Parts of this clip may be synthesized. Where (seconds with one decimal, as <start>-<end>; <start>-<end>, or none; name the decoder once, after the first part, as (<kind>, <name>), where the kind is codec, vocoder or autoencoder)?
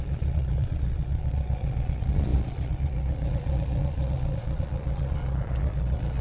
0.0-6.2 (vocoder, Vocos)